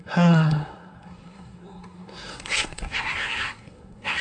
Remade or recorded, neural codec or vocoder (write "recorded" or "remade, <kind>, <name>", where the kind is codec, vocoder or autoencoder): remade, codec, SNAC